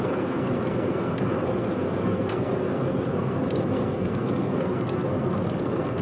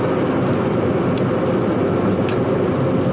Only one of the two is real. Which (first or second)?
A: second